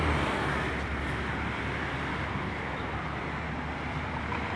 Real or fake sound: real